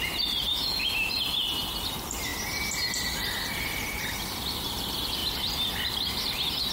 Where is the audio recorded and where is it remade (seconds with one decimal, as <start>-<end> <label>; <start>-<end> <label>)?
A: 0.0-0.5 recorded; 0.5-1.1 remade; 1.1-6.7 recorded